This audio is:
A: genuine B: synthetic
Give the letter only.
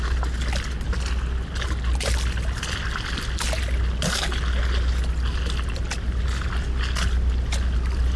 A